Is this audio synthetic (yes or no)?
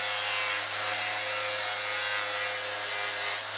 no